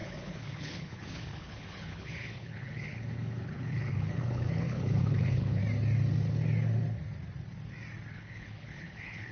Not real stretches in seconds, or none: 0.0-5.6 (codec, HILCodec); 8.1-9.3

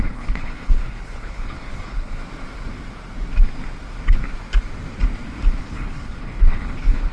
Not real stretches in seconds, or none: 0.0-2.2 (codec, HILCodec); 5.6-7.1

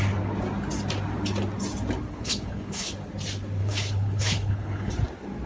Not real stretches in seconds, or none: 2.1-2.9 (codec, HILCodec); 3.6-4.9

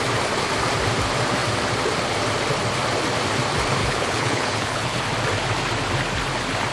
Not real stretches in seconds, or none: 3.8-5.0 (codec, HILCodec)

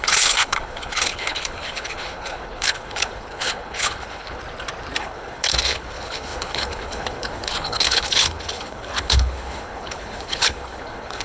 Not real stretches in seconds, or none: 0.0-4.4 (codec, HILCodec); 5.0-11.2

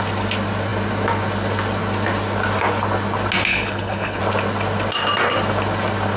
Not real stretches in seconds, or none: 3.5-4.2 (codec, HILCodec)

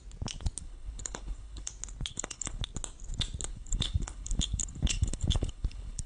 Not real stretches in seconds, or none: 0.6-1.7 (codec, HILCodec); 2.1-2.6; 3.5-6.1